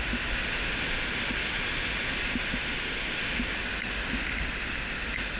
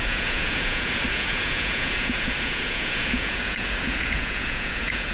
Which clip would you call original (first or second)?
first